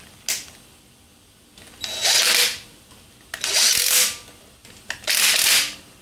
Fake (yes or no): no